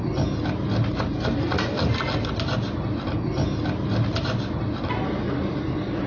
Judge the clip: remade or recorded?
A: recorded